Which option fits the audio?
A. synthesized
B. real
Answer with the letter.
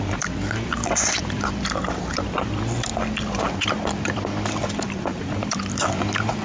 A